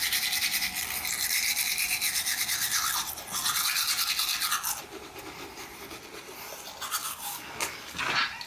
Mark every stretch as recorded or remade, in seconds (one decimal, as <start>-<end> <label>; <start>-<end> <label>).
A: 0.0-7.0 recorded; 7.0-8.0 remade; 8.0-8.5 recorded